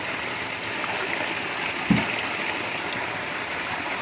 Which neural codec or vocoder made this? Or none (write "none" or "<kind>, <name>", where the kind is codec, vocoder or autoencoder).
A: none